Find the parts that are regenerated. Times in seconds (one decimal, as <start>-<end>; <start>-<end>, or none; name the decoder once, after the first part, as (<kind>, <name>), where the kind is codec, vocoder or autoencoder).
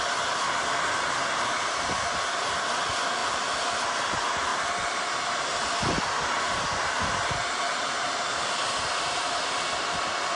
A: none